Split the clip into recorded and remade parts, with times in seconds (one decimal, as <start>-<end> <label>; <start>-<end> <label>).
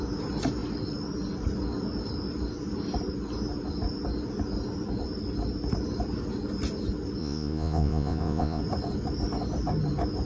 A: 0.0-7.2 recorded; 7.2-8.6 remade; 8.6-10.2 recorded